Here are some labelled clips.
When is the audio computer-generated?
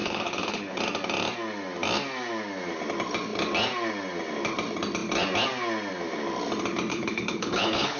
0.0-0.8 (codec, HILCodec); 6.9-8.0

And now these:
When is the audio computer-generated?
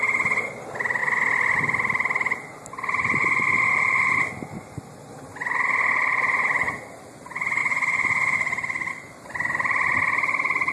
none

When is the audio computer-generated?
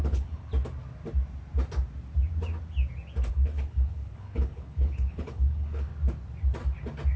0.0-0.5 (codec, HILCodec); 3.3-5.9